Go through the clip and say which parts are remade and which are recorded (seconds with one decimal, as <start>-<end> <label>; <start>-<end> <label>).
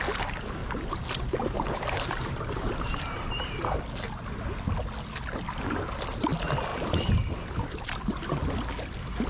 0.0-0.6 recorded; 0.6-3.8 remade; 3.8-9.3 recorded